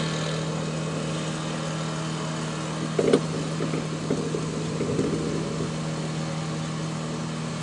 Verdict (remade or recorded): recorded